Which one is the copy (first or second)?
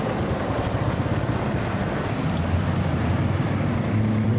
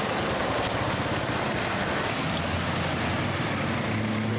first